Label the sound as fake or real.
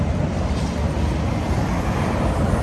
real